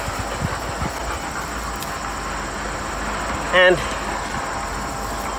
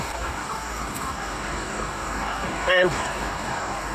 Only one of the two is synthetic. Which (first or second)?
second